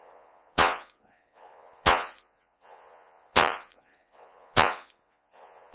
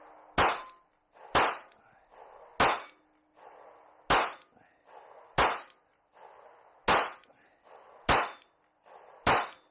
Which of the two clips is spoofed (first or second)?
first